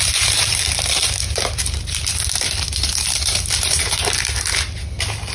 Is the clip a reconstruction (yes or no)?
no